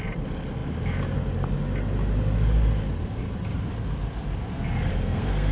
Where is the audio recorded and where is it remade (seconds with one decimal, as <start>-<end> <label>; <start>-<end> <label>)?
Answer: 0.0-4.9 recorded; 4.9-5.5 remade